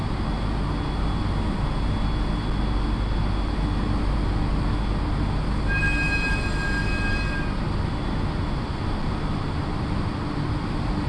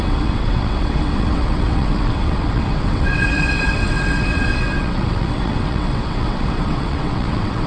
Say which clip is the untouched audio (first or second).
first